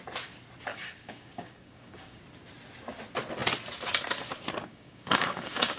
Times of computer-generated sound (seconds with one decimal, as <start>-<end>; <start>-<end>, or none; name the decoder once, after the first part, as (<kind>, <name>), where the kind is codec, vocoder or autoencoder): 0.7-2.2 (codec, DAC); 4.6-5.8